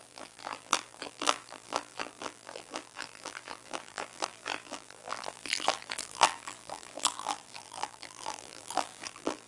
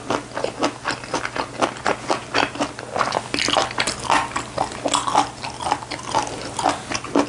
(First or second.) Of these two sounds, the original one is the second